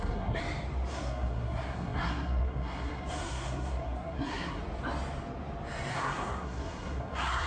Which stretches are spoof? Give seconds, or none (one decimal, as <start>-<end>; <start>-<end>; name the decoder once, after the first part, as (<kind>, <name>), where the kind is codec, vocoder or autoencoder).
0.0-0.4 (codec, SNAC); 0.9-4.6; 5.9-7.5